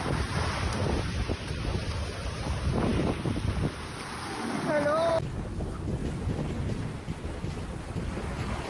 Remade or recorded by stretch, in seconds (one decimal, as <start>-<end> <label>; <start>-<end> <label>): 0.0-2.9 recorded; 2.9-5.1 remade; 5.1-8.7 recorded